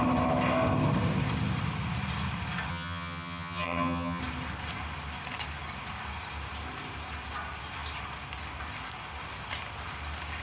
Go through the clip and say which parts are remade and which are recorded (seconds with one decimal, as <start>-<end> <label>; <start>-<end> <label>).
0.0-2.7 recorded; 2.7-4.2 remade; 4.2-10.4 recorded